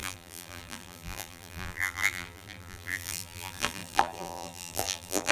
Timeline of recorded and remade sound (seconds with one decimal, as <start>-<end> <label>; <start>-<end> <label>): 0.0-5.3 remade